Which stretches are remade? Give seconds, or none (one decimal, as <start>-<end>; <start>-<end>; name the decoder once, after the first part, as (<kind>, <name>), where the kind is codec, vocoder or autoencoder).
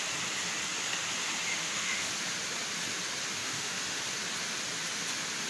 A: 1.5-2.1 (autoencoder, DAC-VAE); 3.4-4.0